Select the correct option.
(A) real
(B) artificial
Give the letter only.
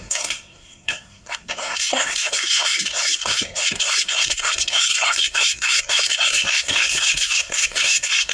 B